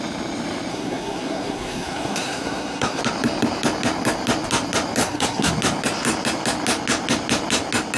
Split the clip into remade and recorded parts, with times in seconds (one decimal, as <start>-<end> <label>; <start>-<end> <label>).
0.0-0.7 recorded; 0.7-3.0 remade; 3.0-5.0 recorded; 5.0-5.5 remade; 5.5-8.0 recorded